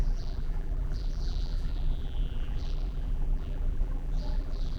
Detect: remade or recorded remade